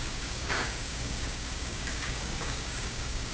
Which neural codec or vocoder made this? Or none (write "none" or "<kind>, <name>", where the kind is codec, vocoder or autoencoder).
codec, DAC